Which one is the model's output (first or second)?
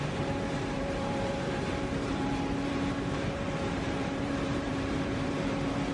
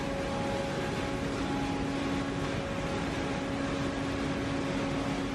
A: first